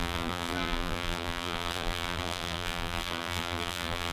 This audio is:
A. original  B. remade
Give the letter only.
B